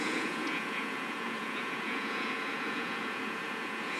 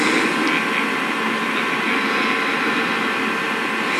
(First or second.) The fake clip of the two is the first